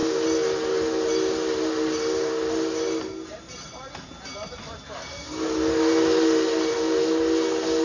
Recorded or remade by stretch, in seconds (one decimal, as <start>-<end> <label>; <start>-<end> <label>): 0.0-7.8 recorded